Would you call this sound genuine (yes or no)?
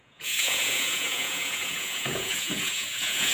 no